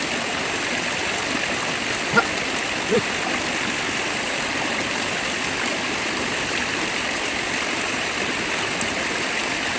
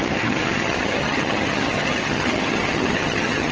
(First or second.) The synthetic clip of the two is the second